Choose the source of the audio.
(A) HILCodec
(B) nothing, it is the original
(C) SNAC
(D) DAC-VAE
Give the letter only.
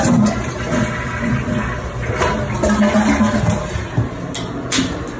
B